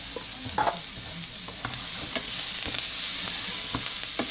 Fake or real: real